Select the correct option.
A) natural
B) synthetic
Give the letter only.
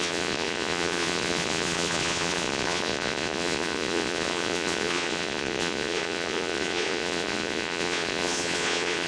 B